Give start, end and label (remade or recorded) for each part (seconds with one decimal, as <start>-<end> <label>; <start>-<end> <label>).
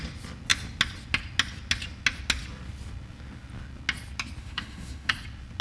0.0-4.4 recorded; 4.4-5.1 remade; 5.1-5.6 recorded